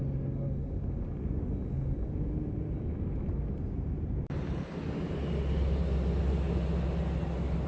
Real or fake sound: real